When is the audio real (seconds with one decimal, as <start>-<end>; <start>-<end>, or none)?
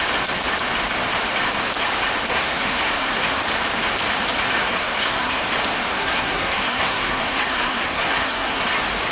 0.0-2.3; 3.4-4.6; 5.4-6.0; 8.6-9.1